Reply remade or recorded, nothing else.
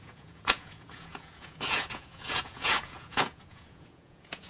remade